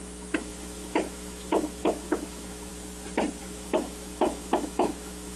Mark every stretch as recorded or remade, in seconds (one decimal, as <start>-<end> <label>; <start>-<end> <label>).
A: 0.0-2.7 remade; 2.7-3.4 recorded; 3.4-5.4 remade